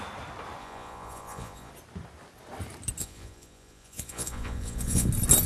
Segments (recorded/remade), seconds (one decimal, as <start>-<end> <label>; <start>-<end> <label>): 0.0-0.6 recorded; 0.6-1.7 remade; 1.7-3.0 recorded; 3.0-5.1 remade; 5.1-5.5 recorded